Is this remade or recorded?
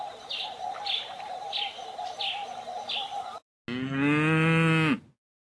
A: recorded